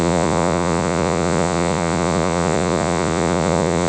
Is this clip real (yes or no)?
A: no